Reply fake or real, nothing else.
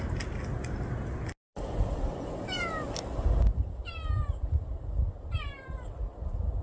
real